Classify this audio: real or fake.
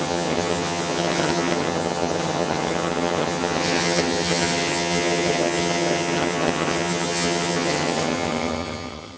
fake